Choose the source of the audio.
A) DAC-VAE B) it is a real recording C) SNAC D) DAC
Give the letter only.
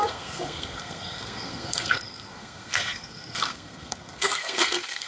C